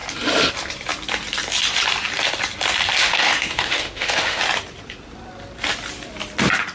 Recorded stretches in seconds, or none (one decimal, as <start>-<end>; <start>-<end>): 0.0-3.0; 4.4-6.7

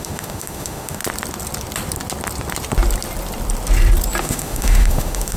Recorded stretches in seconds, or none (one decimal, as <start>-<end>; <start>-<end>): 1.0-4.2